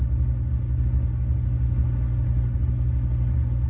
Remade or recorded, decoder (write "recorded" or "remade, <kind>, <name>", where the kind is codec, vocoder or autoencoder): recorded